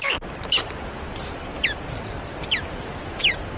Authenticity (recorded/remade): recorded